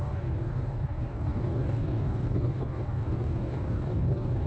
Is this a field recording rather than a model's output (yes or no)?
no